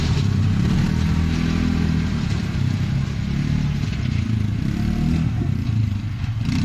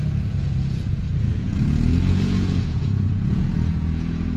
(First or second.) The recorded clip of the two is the first